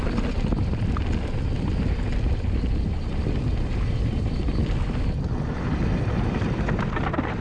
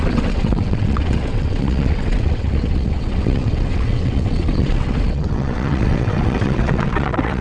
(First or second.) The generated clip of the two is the second